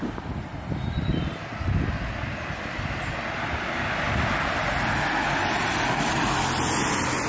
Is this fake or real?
real